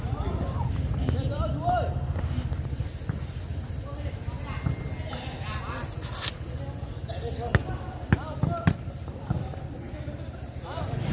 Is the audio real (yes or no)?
yes